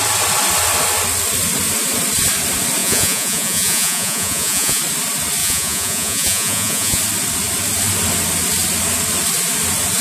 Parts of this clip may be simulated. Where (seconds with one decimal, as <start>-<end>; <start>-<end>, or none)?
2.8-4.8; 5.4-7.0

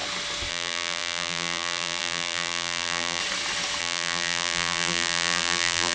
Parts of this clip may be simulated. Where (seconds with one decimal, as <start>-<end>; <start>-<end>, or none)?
0.5-3.2; 3.8-5.9

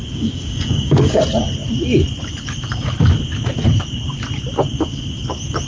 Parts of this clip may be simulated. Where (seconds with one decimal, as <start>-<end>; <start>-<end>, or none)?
0.0-1.2

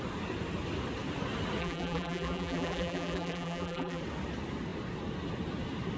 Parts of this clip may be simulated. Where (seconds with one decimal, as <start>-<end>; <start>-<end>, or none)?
1.6-4.0

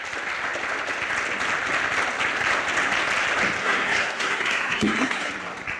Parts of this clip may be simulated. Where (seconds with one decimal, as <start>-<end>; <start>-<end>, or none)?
3.6-5.3

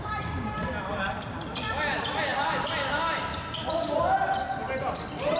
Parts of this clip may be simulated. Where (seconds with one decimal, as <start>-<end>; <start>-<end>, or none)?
none